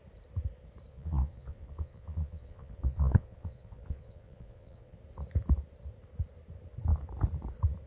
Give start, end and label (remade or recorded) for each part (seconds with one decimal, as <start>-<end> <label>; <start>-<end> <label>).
0.0-0.9 recorded; 0.9-5.0 remade; 5.0-7.9 recorded